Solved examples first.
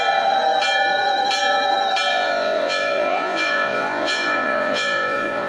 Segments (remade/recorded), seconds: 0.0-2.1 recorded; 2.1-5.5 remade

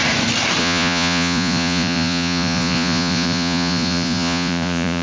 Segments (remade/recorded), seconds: 0.0-0.6 recorded; 0.6-5.0 remade

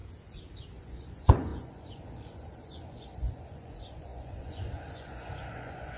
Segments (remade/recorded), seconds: 0.0-0.8 recorded; 0.8-6.0 remade

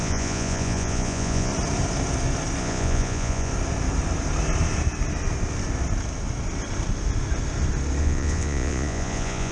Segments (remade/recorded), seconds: 0.0-1.5 remade; 1.5-2.6 recorded; 2.6-3.5 remade; 3.5-8.0 recorded; 8.0-9.5 remade

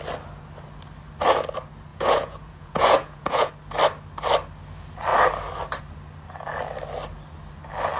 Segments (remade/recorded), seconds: 0.0-1.9 recorded; 1.9-3.5 remade; 3.5-8.0 recorded

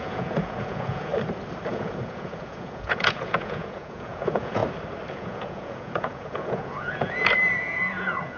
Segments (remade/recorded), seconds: 0.0-1.1 remade; 1.1-1.7 recorded; 1.7-4.6 remade; 4.6-5.1 recorded; 5.1-8.4 remade

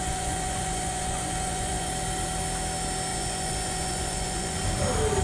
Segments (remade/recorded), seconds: 0.0-1.9 remade; 1.9-3.1 recorded; 3.1-4.6 remade; 4.6-5.2 recorded